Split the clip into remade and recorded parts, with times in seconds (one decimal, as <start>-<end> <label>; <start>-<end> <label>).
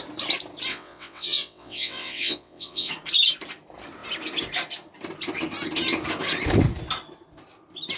0.0-0.7 recorded; 0.7-2.9 remade; 2.9-8.0 recorded